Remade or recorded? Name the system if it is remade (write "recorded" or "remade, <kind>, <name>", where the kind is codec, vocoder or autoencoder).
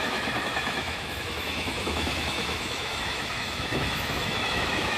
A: remade, autoencoder, DAC-VAE